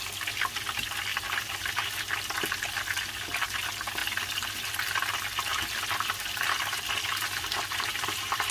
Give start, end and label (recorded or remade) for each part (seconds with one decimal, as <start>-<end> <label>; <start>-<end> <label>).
0.0-1.1 recorded; 1.1-1.7 remade; 1.7-5.5 recorded; 5.5-8.5 remade